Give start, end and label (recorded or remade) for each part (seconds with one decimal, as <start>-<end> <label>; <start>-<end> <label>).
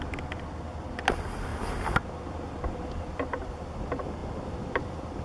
0.0-5.2 recorded